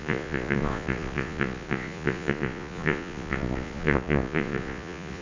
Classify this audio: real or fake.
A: fake